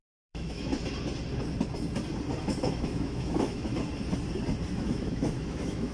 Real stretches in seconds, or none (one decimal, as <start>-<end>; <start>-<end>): 0.7-2.4; 3.7-4.7